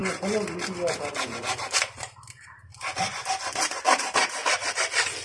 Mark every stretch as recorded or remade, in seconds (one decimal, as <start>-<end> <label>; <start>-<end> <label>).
0.0-1.1 recorded; 1.1-2.7 remade; 2.7-3.3 recorded; 3.3-4.4 remade; 4.4-5.2 recorded